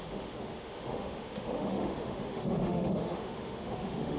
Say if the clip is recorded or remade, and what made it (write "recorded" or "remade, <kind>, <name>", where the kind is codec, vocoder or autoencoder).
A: remade, autoencoder, DAC-VAE